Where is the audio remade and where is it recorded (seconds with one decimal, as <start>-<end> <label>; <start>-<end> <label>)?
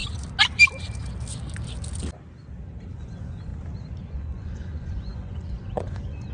0.0-3.0 recorded; 3.0-3.5 remade; 3.5-4.1 recorded; 4.1-6.3 remade